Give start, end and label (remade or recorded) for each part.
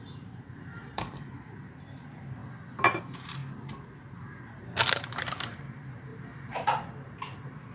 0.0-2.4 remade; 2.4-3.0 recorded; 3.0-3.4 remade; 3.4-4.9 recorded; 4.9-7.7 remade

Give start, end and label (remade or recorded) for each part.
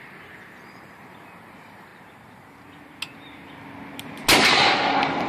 0.0-1.9 remade; 1.9-5.3 recorded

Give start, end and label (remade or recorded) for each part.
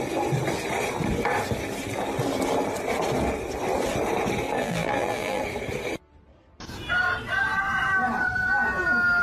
0.0-4.6 recorded; 4.6-5.4 remade; 5.4-9.2 recorded